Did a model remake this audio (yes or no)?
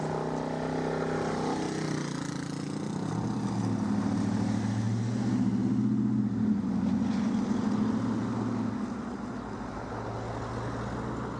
no